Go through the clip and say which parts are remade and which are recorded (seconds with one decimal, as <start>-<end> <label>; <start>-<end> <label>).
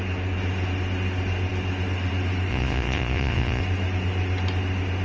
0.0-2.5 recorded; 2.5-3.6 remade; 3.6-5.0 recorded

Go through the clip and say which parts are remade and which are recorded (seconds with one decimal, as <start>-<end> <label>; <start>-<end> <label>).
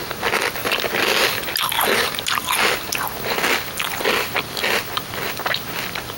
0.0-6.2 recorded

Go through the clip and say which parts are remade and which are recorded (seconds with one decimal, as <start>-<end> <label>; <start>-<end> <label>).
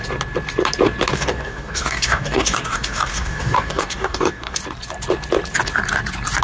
0.0-1.1 recorded; 1.1-4.6 remade; 4.6-6.4 recorded